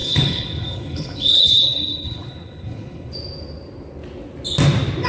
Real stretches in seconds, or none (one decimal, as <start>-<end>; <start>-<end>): 3.1-5.1